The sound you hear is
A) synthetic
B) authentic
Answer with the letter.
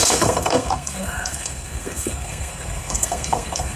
A